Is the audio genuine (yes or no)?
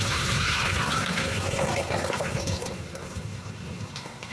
no